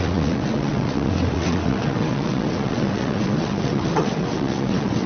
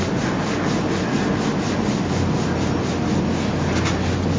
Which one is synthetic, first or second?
first